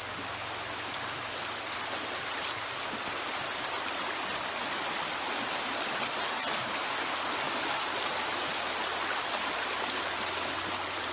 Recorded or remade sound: recorded